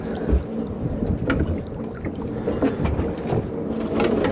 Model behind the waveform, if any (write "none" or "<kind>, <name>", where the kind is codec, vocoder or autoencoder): none